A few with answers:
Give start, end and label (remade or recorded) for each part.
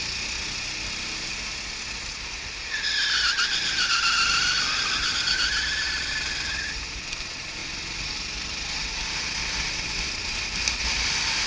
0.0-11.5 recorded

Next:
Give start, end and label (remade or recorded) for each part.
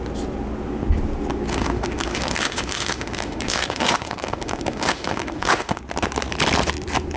0.0-1.5 recorded; 1.5-5.8 remade; 5.8-7.2 recorded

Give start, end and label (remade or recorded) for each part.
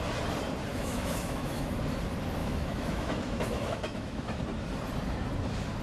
0.0-0.7 recorded; 0.7-1.7 remade; 1.7-2.4 recorded; 2.4-4.4 remade; 4.4-5.8 recorded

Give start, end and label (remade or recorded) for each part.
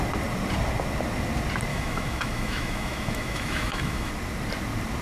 0.0-1.7 recorded; 1.7-4.1 remade; 4.1-5.0 recorded